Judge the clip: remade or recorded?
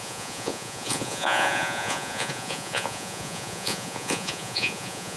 remade